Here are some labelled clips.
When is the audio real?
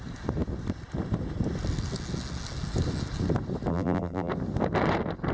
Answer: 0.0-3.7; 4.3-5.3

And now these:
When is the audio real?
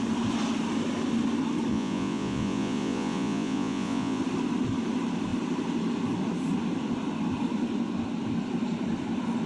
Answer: 0.0-1.7; 4.2-9.5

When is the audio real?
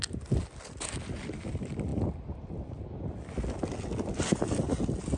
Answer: 0.0-5.2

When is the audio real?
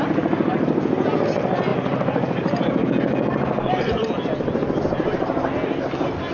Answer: 0.0-6.3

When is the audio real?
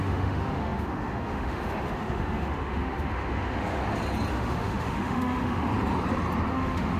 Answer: 3.8-4.3; 5.7-6.5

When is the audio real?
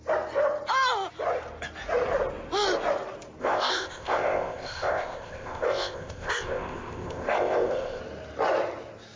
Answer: 0.0-3.4; 8.0-9.2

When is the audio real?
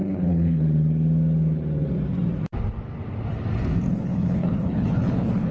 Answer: 0.6-3.9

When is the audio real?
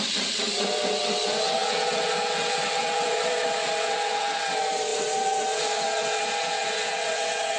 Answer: none